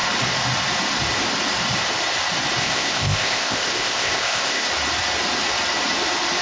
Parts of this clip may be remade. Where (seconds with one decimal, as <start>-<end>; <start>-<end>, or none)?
2.6-4.7